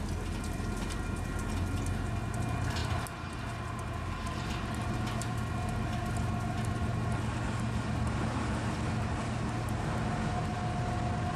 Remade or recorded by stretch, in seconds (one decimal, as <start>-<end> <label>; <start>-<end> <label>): 0.0-11.4 recorded